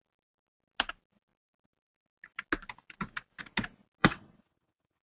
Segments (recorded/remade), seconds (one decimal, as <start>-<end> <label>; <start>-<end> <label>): 0.0-4.0 recorded; 4.0-5.0 remade